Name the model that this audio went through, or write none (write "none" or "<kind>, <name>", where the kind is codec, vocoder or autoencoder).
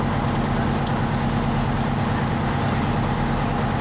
none